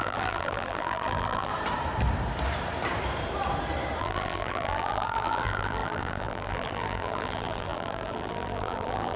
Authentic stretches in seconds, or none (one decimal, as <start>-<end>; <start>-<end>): 1.5-4.0